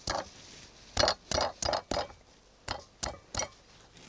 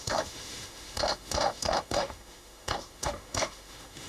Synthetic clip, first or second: second